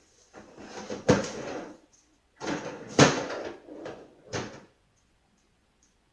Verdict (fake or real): fake